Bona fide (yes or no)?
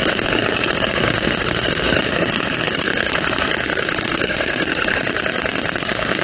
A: no